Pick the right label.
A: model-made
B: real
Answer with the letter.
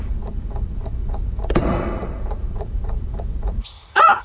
A